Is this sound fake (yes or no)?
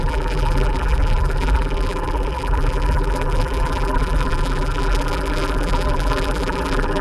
yes